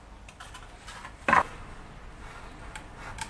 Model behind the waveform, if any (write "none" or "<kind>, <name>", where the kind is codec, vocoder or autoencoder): none